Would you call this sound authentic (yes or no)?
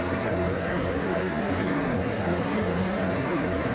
no